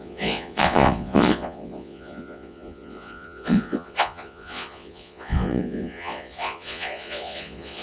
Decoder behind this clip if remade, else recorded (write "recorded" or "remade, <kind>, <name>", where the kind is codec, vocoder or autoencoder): remade, vocoder, Vocos